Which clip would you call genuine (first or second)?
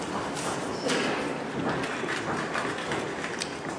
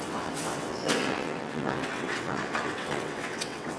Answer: first